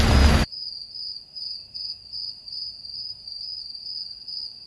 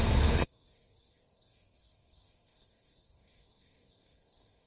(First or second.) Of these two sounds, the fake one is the second